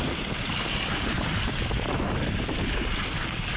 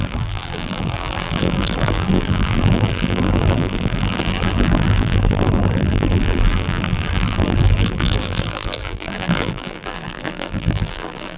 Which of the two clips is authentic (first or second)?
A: first